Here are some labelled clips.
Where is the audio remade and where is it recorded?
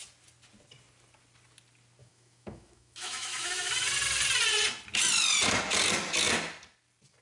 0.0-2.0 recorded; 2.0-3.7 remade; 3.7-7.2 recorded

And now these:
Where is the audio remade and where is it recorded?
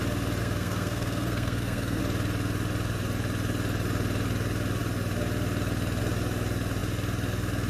0.0-0.4 recorded; 0.4-2.0 remade; 2.0-7.7 recorded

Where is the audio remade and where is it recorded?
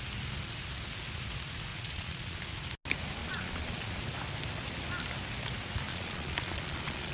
0.0-1.7 recorded; 1.7-2.4 remade; 2.4-3.2 recorded; 3.2-3.9 remade; 3.9-5.9 recorded; 5.9-7.1 remade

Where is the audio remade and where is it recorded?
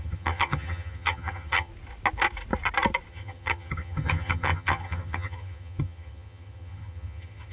0.0-1.7 remade; 1.7-3.1 recorded; 3.1-7.5 remade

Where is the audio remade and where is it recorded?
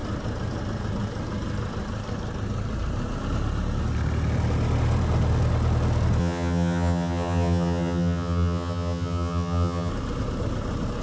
0.0-6.2 recorded; 6.2-9.9 remade; 9.9-11.0 recorded